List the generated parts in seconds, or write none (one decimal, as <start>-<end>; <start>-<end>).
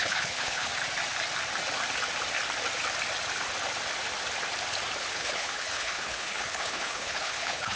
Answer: 0.0-0.7; 5.1-7.8